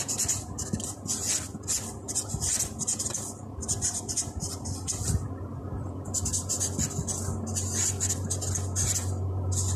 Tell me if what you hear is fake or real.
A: real